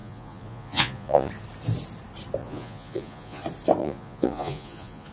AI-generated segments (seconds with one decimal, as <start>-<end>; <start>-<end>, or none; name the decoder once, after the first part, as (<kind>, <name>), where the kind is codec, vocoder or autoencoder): 0.0-1.3 (vocoder, Vocos); 2.4-3.4; 3.8-5.1